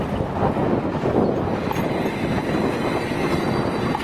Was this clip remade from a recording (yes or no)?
no